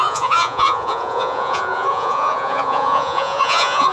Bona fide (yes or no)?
no